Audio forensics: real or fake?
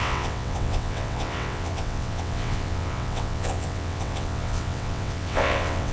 fake